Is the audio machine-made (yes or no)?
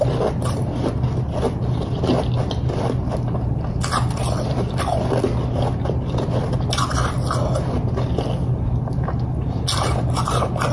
no